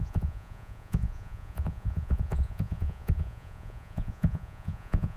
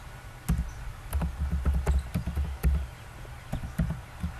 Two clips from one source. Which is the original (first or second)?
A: second